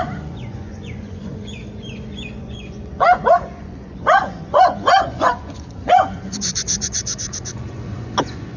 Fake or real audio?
fake